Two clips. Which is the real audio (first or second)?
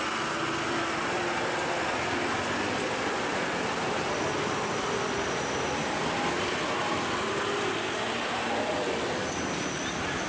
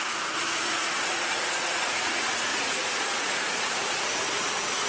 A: first